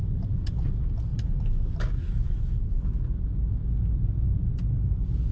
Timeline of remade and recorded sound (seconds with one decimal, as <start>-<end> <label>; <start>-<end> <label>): 0.0-5.3 recorded